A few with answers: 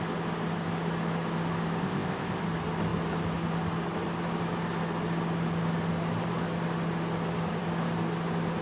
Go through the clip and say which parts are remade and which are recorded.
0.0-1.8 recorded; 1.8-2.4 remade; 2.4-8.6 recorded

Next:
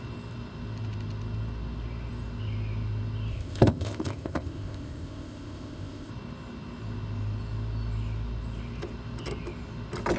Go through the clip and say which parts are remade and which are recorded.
0.0-3.3 recorded; 3.3-6.1 remade; 6.1-10.2 recorded

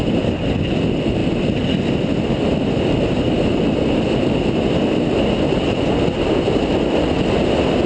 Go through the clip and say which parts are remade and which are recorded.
0.0-7.9 recorded

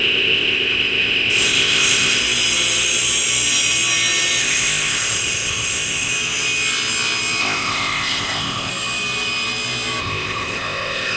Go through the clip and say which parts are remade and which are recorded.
0.0-2.2 remade; 2.2-4.4 recorded; 4.4-6.1 remade; 6.1-7.4 recorded; 7.4-8.7 remade; 8.7-10.0 recorded; 10.0-11.2 remade

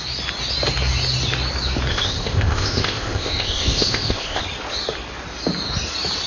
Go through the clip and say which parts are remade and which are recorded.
0.0-1.9 recorded; 1.9-4.4 remade; 4.4-6.3 recorded

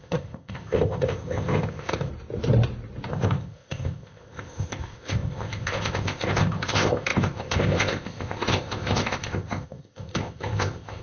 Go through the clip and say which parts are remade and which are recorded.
0.0-2.1 remade; 2.1-3.1 recorded; 3.1-11.0 remade

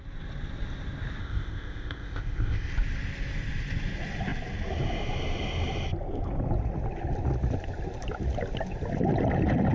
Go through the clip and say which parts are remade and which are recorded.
0.0-1.2 recorded; 1.2-2.7 remade; 2.7-9.7 recorded